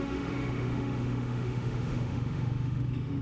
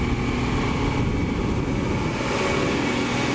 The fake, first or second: first